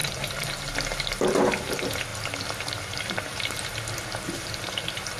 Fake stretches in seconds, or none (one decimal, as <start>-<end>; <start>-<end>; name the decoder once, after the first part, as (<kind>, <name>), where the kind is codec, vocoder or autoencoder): 0.0-0.6 (vocoder, BigVGAN v2)